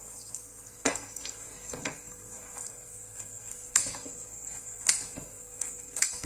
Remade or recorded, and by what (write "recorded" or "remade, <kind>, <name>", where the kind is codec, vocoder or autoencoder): remade, codec, SNAC